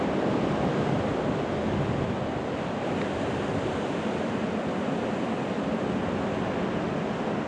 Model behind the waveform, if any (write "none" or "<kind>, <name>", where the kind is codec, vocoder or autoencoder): none